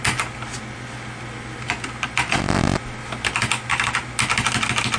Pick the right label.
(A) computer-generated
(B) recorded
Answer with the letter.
B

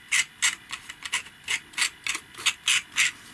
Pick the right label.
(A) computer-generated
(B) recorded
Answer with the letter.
B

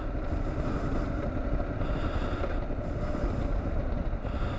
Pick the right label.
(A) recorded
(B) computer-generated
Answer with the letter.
A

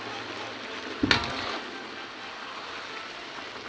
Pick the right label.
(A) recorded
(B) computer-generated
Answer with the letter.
A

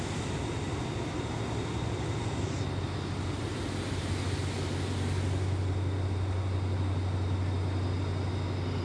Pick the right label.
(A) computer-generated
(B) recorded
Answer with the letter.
B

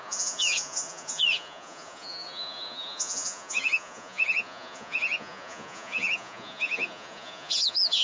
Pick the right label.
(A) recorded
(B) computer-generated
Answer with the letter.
B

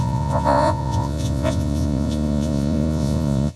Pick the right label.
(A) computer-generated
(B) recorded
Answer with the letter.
A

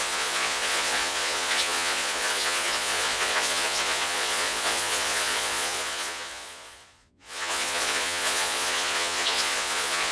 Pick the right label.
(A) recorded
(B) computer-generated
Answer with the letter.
B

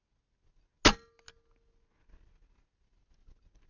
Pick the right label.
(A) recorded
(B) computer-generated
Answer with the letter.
A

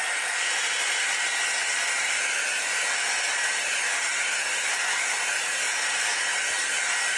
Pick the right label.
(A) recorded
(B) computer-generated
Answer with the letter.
A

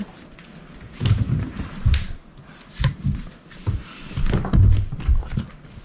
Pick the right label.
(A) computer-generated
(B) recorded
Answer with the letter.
B